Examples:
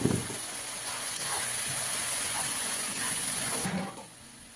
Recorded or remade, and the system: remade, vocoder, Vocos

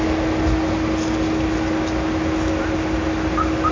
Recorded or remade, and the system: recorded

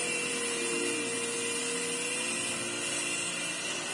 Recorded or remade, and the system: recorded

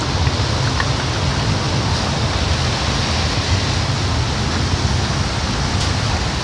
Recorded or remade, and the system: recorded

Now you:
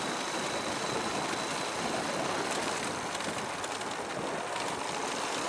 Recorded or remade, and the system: recorded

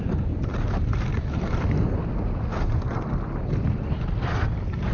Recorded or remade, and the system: recorded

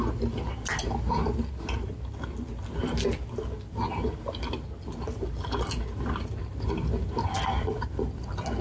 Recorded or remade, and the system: recorded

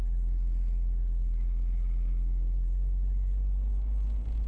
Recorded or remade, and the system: recorded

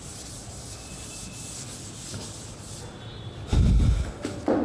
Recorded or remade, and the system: recorded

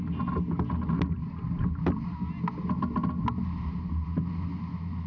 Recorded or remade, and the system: recorded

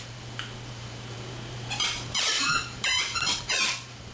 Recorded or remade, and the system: remade, vocoder, BigVGAN v2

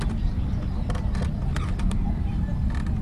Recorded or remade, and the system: recorded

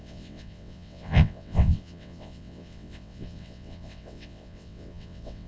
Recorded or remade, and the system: remade, vocoder, WaveNeXt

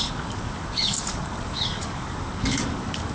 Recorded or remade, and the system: remade, codec, DAC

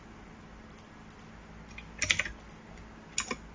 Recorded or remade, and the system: recorded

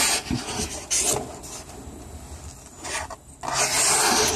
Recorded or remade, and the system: recorded